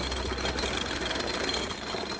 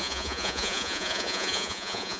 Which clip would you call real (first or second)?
first